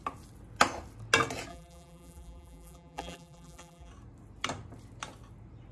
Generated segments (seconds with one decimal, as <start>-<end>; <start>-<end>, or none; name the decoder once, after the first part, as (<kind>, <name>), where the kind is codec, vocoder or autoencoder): 1.5-3.9 (vocoder, BigVGAN v2)